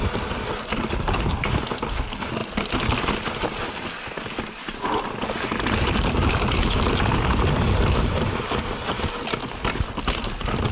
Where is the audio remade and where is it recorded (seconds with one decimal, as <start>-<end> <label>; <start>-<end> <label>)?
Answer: 0.0-10.7 recorded